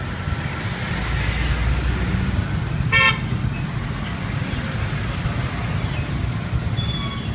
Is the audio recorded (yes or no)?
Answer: yes